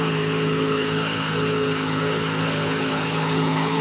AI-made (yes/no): yes